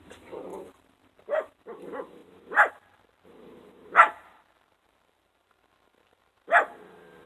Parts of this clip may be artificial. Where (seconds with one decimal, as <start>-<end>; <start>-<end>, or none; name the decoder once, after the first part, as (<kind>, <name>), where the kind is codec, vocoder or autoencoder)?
0.5-1.5 (vocoder, BigVGAN v2)